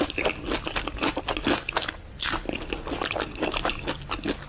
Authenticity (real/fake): real